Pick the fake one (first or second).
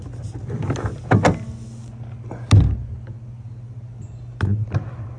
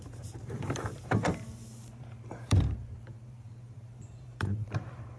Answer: second